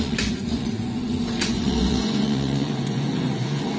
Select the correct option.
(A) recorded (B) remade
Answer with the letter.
B